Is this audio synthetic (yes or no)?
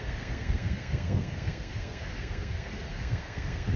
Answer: yes